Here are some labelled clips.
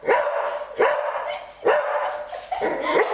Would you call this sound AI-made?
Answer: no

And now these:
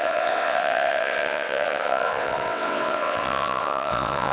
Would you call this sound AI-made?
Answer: yes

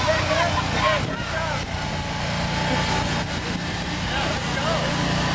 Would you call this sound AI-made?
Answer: no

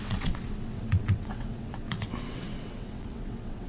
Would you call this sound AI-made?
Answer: yes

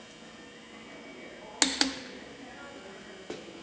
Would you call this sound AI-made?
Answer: no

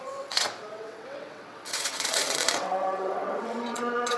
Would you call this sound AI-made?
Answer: yes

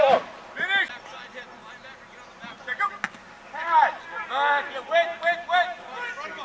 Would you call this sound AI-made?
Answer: no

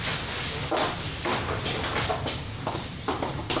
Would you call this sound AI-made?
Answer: no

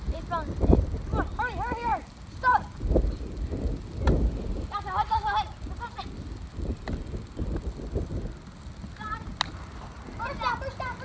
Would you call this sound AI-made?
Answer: no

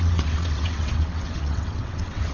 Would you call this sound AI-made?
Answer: yes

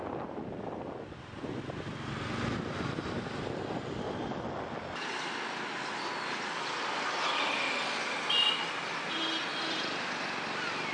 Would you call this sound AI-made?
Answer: no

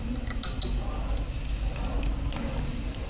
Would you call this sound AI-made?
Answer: no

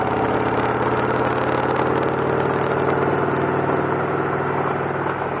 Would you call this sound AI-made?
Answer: no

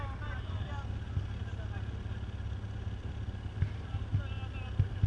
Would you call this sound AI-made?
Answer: no